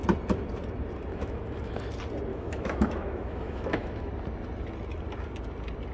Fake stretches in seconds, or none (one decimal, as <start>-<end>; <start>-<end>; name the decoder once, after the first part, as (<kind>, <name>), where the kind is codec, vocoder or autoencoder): 1.1-1.8 (autoencoder, DAC-VAE); 2.3-4.1